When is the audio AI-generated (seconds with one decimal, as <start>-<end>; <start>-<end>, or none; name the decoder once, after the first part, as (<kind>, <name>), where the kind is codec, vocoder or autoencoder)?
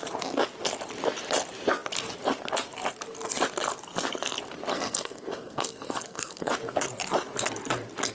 4.7-6.5 (codec, SNAC)